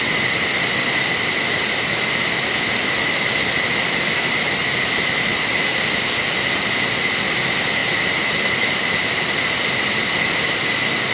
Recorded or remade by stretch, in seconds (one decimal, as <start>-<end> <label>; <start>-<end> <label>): 0.0-11.1 recorded